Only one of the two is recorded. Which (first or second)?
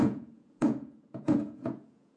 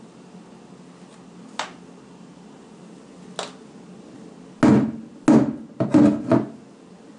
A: second